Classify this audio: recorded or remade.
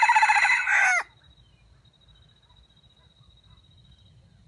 recorded